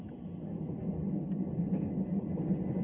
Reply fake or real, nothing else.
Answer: real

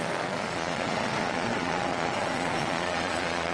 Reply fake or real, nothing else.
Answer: fake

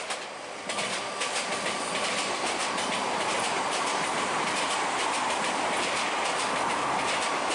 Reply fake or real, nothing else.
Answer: real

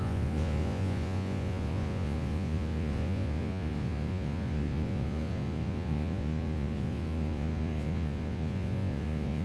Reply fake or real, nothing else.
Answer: fake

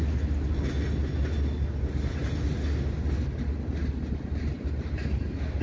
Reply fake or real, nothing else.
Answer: real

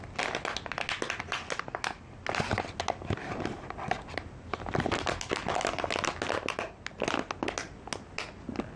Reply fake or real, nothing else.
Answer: real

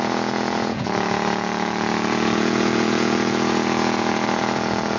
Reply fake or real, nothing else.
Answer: fake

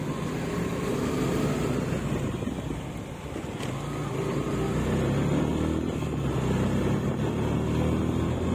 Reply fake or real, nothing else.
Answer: real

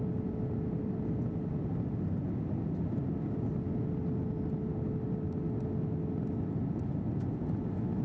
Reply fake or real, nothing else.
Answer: real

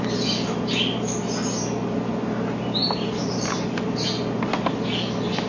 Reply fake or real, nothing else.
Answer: real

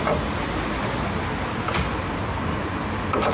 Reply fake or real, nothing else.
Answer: real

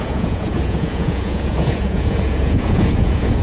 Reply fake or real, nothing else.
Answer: fake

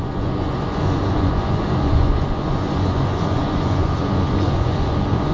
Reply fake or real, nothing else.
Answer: fake